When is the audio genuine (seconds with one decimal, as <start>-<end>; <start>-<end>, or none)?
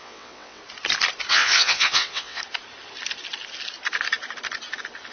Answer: 0.6-1.3; 2.4-5.1